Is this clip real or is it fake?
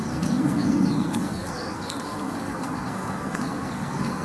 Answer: fake